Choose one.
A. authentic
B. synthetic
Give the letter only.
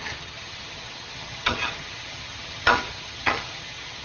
B